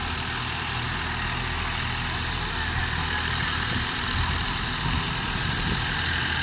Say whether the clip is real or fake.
real